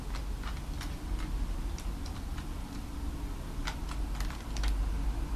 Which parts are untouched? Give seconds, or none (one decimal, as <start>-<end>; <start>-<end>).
0.0-2.3; 3.4-5.4